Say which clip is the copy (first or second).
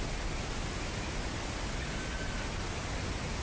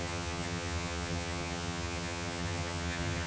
second